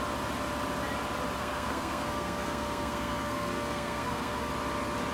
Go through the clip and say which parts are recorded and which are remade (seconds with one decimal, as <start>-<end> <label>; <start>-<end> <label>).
0.0-1.4 recorded; 1.4-4.5 remade; 4.5-5.1 recorded